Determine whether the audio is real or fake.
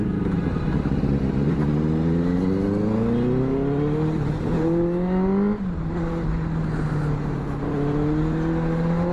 real